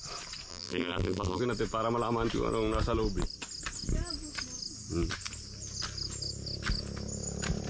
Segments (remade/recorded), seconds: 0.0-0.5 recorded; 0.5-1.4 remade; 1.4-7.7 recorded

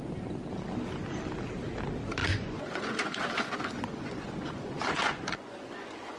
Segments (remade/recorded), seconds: 0.0-2.2 recorded; 2.2-6.2 remade

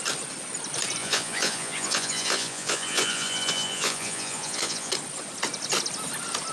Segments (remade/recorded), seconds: 0.0-1.0 recorded; 1.0-4.9 remade; 4.9-6.5 recorded